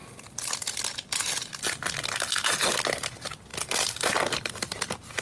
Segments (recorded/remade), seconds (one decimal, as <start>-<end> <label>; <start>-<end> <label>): 0.0-3.1 recorded; 3.1-3.5 remade; 3.5-4.5 recorded; 4.5-5.2 remade